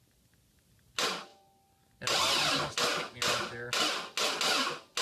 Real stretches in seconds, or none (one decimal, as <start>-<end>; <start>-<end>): 0.0-5.0